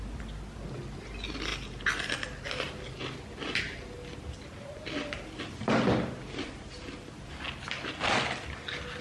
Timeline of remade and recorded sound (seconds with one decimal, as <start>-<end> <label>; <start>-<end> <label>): 0.0-9.0 recorded